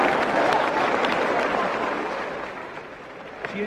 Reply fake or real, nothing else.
real